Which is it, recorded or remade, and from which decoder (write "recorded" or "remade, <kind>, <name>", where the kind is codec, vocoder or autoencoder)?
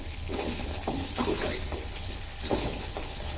remade, codec, HILCodec